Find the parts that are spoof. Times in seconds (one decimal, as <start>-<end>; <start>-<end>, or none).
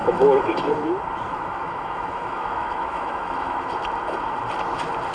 0.0-0.7; 1.3-3.7